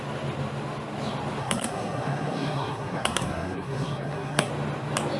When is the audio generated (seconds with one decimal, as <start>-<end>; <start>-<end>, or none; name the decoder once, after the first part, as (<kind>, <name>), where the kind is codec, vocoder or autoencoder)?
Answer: 1.4-4.5 (codec, SNAC)